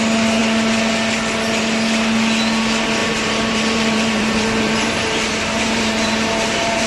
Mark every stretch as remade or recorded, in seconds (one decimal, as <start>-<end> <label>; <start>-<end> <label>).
0.0-3.0 recorded; 3.0-6.9 remade